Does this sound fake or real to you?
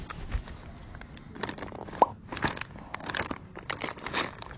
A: real